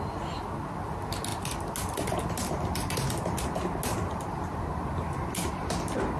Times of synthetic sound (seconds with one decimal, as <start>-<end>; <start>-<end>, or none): none